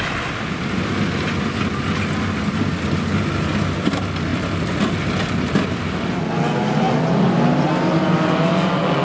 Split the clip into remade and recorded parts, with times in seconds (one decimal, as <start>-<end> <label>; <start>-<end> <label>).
0.0-9.0 recorded